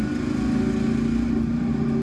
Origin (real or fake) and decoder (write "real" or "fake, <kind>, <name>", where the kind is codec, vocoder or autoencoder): real